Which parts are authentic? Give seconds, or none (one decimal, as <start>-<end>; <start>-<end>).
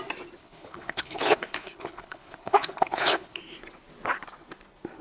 0.0-0.4; 3.4-5.0